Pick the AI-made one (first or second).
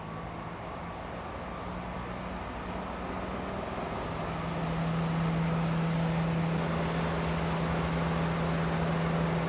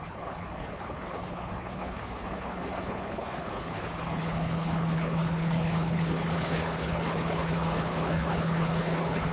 second